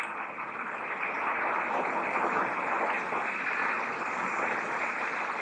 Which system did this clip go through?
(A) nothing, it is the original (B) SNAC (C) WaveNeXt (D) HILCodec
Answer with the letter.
A